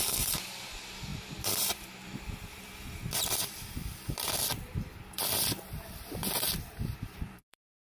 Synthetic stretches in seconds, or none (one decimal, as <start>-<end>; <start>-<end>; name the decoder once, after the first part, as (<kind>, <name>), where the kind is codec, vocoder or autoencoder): 0.0-7.8 (vocoder, BigVGAN v2)